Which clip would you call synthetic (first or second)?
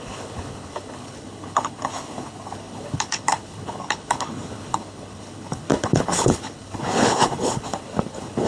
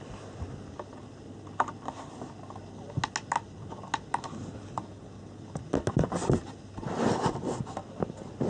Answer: first